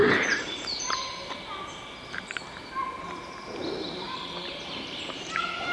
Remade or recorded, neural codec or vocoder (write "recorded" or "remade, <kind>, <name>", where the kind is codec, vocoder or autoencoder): remade, vocoder, BigVGAN v2